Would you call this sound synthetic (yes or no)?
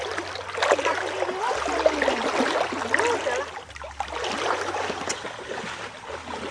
yes